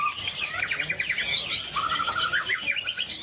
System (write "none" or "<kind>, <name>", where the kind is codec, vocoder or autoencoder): none